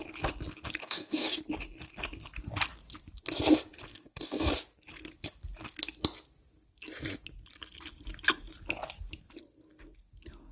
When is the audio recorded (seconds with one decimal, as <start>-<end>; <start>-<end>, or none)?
0.0-0.8; 1.4-3.9; 4.5-10.5